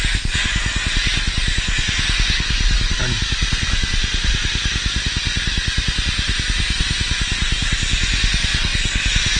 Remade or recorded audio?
recorded